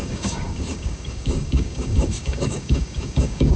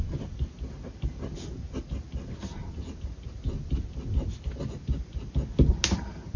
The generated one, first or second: first